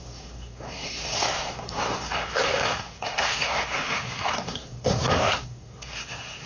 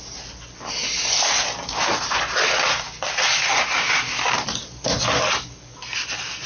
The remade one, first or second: first